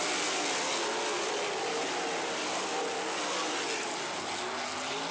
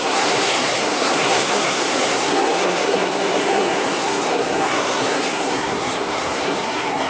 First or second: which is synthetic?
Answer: second